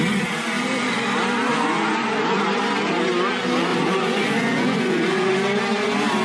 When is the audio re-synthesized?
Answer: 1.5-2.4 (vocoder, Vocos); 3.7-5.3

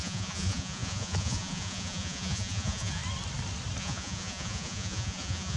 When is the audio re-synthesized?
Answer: 0.0-3.0 (vocoder, Vocos); 3.8-5.6

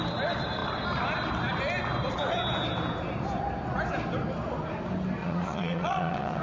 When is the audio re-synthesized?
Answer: 5.2-6.4 (vocoder, Vocos)

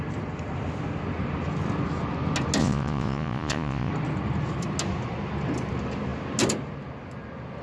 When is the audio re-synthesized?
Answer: 2.6-3.9 (vocoder, Vocos)

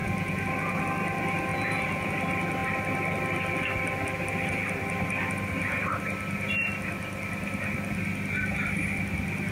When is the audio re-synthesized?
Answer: 0.0-0.8 (vocoder, Vocos); 1.5-2.1

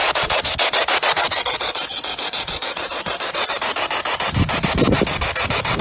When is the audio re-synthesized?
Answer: 0.0-3.5 (vocoder, Vocos)